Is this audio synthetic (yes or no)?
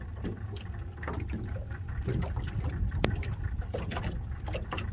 no